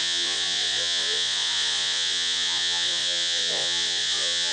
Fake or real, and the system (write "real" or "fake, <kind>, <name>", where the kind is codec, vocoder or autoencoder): fake, vocoder, Vocos